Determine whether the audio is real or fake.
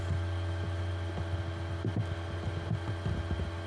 real